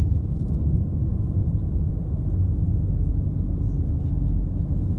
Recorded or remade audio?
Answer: recorded